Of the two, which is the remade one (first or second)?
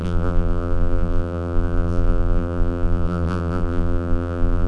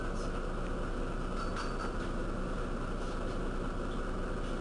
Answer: first